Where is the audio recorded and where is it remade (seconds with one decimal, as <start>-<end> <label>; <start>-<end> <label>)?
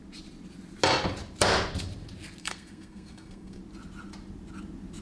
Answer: 0.0-2.4 recorded; 2.4-3.6 remade; 3.6-5.0 recorded